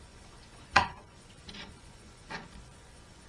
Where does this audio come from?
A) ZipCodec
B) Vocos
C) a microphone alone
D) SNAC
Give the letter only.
B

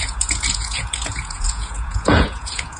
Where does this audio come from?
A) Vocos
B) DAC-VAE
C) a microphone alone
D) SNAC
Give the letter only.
A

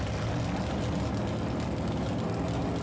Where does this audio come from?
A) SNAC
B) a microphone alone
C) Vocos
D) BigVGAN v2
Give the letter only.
B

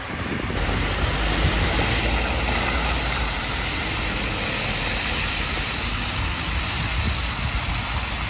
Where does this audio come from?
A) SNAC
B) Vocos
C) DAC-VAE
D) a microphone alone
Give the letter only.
D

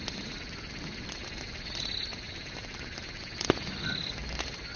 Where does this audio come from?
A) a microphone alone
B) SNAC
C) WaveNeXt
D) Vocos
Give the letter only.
A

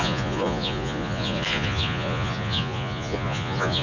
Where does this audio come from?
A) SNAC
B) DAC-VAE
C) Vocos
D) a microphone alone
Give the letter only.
C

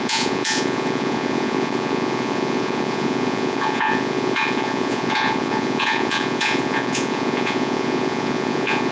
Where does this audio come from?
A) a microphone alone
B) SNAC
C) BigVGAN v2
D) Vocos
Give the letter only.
D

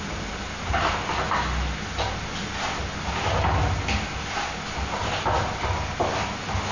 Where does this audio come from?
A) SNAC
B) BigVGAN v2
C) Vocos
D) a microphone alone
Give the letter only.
D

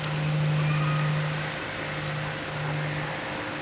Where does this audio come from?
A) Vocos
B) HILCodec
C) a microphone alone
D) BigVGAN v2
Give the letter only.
C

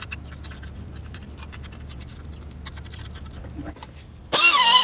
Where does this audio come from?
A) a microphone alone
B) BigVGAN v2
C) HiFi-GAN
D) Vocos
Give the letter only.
A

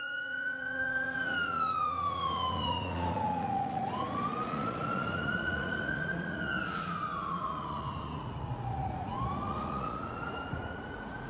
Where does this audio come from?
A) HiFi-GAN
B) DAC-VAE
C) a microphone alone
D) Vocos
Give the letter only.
D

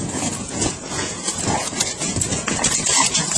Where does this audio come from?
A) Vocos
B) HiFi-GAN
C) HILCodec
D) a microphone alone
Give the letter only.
A